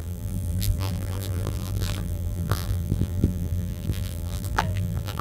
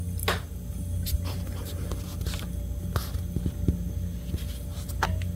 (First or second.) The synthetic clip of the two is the first